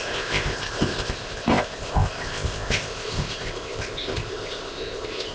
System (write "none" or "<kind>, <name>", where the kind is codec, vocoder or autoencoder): codec, ZipCodec